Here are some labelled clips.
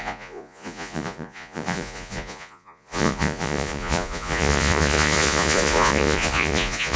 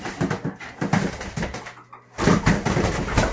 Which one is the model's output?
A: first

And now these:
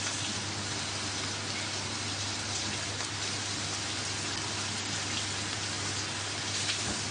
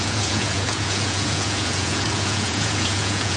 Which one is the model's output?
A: second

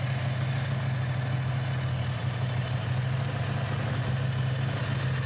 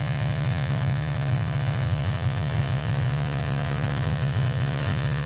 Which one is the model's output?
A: second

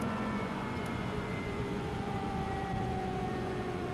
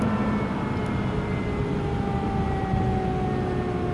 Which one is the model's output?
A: first